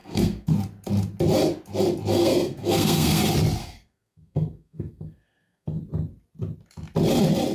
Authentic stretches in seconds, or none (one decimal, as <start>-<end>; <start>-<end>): 0.5-2.2; 3.2-3.6; 5.8-7.5